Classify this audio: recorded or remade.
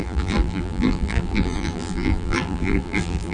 remade